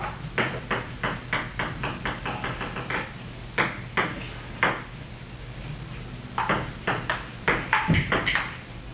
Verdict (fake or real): real